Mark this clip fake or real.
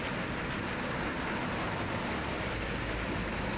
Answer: real